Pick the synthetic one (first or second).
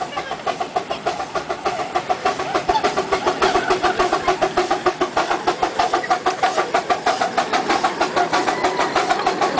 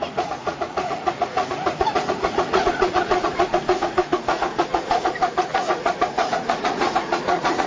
second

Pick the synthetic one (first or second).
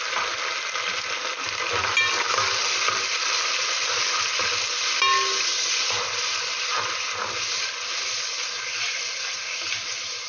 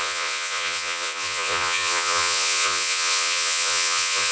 second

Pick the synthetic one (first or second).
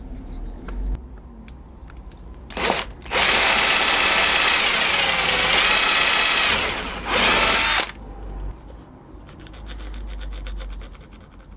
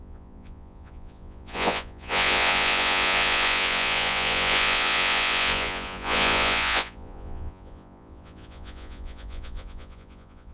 second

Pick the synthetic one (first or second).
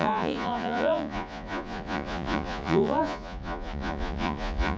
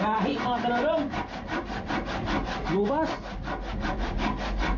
first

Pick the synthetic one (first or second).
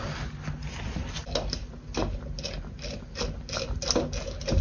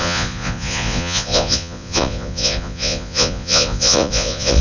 second